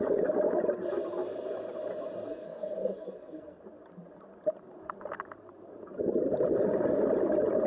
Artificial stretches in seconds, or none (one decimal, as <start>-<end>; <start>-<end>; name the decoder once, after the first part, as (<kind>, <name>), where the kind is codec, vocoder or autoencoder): 2.3-3.6 (codec, SNAC)